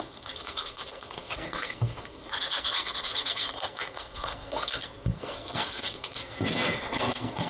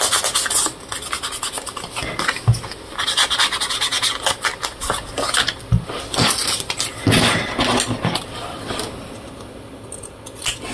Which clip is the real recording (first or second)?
second